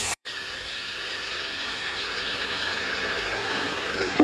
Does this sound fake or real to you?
fake